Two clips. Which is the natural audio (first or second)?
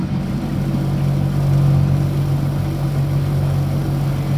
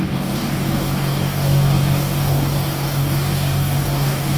first